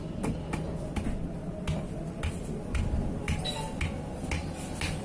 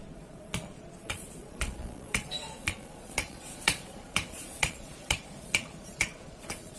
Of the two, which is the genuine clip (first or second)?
first